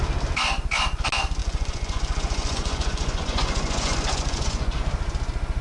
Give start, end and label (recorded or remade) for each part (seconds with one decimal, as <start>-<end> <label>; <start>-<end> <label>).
0.0-1.4 recorded; 1.4-4.8 remade; 4.8-5.6 recorded